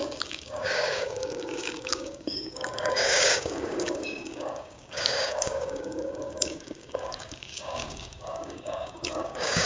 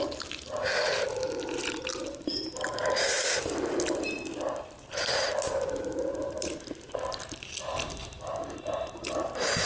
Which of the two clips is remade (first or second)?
first